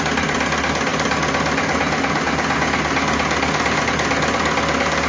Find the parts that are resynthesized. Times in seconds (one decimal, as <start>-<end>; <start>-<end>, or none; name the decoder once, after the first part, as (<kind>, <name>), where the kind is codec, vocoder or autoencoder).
none